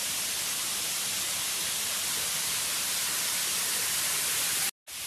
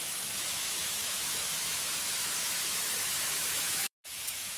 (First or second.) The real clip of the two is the first